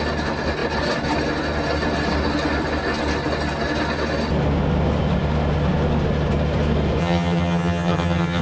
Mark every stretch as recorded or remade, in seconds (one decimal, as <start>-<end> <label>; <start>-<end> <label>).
0.0-7.0 recorded; 7.0-8.4 remade